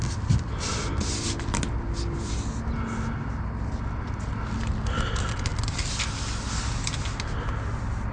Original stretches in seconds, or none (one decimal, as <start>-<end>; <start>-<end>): 0.0-8.1